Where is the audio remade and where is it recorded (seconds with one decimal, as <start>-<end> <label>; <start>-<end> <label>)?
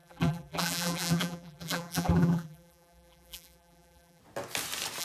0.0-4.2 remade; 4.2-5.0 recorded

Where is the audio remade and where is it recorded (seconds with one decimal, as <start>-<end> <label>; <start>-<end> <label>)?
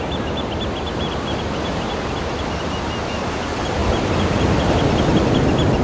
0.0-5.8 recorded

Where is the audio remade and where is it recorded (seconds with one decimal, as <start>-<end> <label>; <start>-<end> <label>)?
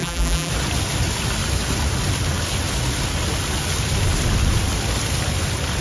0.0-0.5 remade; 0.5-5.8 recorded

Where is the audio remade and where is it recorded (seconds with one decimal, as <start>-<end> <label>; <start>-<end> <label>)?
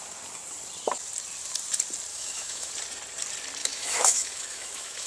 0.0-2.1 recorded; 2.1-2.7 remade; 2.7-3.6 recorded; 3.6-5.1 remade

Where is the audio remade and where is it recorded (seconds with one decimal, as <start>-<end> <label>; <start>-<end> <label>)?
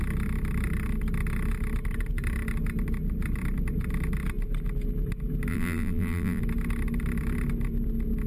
0.0-5.5 recorded; 5.5-6.4 remade; 6.4-8.3 recorded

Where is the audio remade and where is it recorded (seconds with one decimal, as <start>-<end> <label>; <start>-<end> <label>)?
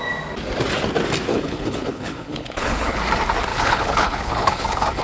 0.0-1.3 recorded; 1.3-3.0 remade; 3.0-3.5 recorded; 3.5-5.0 remade